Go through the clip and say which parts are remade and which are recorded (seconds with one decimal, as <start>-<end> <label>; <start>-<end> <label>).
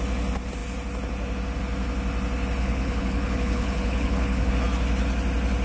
0.0-2.6 recorded; 2.6-4.5 remade; 4.5-5.6 recorded